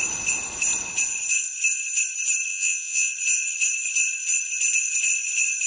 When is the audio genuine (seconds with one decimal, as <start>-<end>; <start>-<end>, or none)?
0.0-2.5; 3.1-5.7

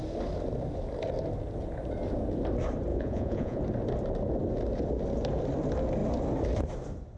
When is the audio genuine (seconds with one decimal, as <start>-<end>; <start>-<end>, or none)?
0.0-2.9; 3.6-7.2

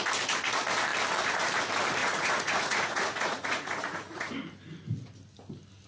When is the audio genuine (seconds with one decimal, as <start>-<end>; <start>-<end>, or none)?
0.0-2.0; 4.3-5.9

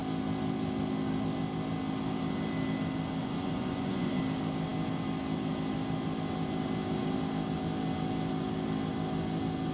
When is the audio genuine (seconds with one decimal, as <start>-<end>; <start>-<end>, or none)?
0.0-3.2; 4.2-9.7

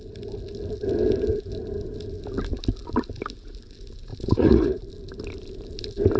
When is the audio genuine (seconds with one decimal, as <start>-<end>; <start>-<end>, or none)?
0.0-4.1; 4.8-6.2

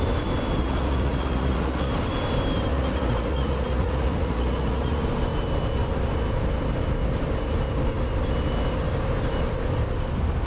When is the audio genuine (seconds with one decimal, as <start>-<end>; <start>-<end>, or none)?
0.0-0.6; 1.9-2.7; 5.0-10.5

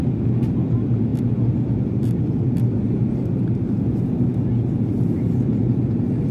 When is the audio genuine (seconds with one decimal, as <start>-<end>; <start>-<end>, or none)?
0.0-6.3

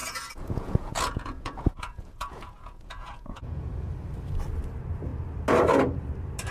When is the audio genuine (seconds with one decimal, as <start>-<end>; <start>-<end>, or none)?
3.9-6.5